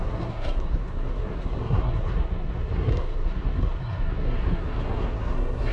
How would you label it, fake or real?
fake